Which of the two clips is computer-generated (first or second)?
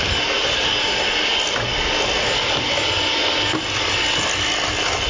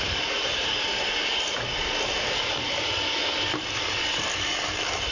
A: second